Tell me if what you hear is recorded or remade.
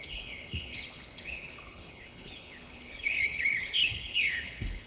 remade